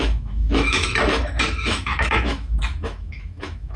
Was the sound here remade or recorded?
remade